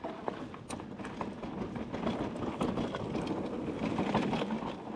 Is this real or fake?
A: real